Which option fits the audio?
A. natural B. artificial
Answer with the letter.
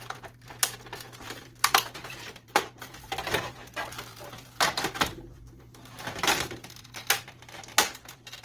B